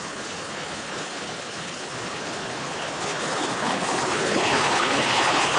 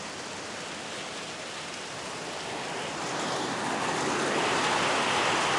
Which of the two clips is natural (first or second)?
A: second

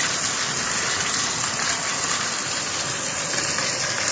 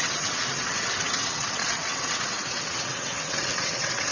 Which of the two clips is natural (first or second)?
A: first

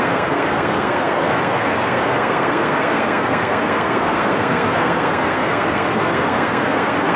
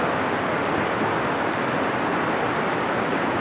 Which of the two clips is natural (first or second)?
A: second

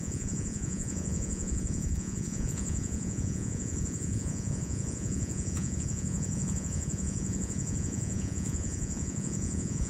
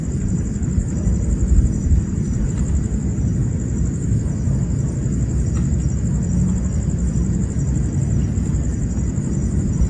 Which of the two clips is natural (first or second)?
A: second